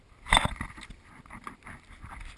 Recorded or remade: recorded